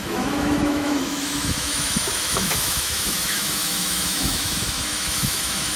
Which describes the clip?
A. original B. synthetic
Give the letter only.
B